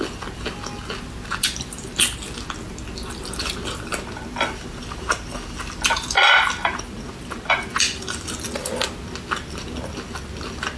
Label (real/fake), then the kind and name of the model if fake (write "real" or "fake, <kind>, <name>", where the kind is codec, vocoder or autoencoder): real